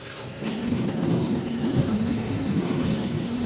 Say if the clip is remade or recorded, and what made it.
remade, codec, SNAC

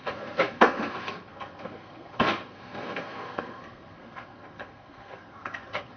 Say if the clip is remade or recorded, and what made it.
remade, codec, SNAC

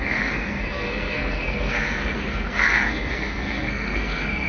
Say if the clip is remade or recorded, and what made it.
remade, codec, SNAC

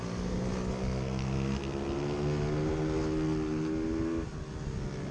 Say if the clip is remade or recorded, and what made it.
recorded